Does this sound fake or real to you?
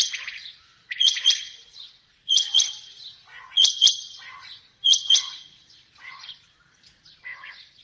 fake